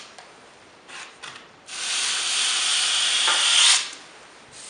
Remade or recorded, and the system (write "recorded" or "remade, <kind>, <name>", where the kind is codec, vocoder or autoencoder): recorded